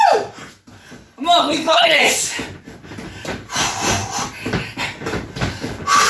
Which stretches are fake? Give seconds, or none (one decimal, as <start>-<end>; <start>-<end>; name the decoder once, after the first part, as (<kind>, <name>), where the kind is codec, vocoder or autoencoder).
1.4-2.0 (codec, HILCodec)